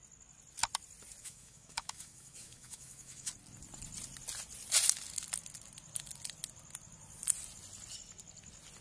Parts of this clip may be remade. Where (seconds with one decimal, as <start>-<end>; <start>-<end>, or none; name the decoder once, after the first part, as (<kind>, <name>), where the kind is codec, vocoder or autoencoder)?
1.2-3.3 (autoencoder, DAC-VAE)